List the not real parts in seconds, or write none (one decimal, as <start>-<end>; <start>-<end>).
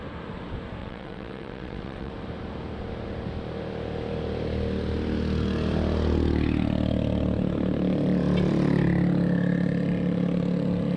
0.8-2.1